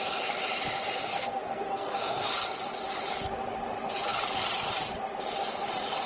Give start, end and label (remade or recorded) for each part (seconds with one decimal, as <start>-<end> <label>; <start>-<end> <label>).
0.0-1.1 recorded; 1.1-2.3 remade; 2.3-6.1 recorded